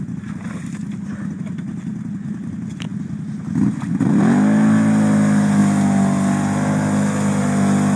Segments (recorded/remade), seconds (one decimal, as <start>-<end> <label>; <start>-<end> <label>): 0.0-8.0 recorded